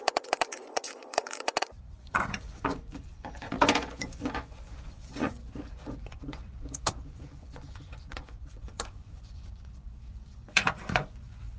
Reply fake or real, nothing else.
fake